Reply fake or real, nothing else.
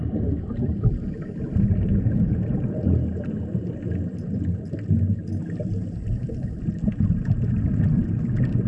real